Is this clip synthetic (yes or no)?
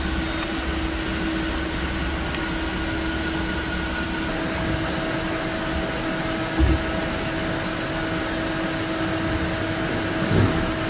no